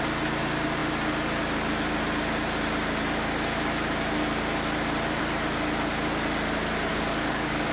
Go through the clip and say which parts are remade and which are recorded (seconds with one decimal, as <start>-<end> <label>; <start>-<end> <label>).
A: 0.0-6.9 recorded; 6.9-7.7 remade